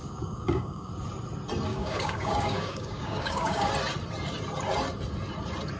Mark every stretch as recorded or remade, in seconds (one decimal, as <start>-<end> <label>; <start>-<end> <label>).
0.0-0.9 remade; 0.9-1.7 recorded; 1.7-3.7 remade; 3.7-5.8 recorded